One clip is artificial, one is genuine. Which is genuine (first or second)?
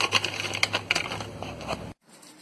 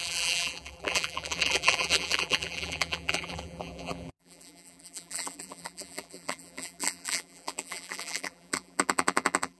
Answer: first